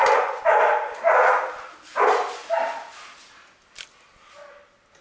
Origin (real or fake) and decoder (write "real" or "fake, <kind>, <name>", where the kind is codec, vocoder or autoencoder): real